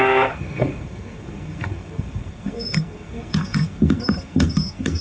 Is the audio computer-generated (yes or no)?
yes